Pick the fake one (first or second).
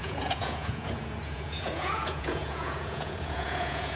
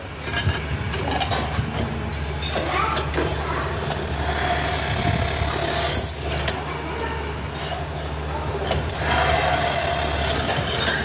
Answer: first